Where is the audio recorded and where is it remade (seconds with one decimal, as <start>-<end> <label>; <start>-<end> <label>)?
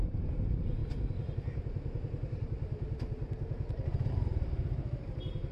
0.0-0.8 remade; 0.8-4.1 recorded; 4.1-5.5 remade